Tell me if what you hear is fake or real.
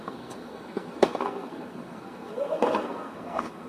fake